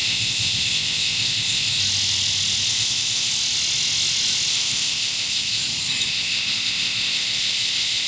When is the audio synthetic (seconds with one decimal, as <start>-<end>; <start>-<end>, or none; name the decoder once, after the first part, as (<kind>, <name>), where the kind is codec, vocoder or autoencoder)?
0.0-1.7 (codec, ZipCodec); 2.7-3.3; 4.5-5.6; 6.1-8.1